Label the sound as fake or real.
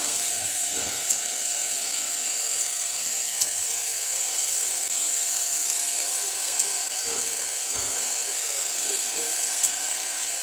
fake